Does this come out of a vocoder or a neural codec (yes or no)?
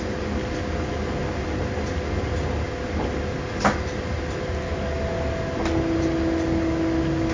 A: no